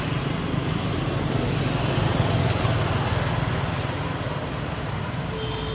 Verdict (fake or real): real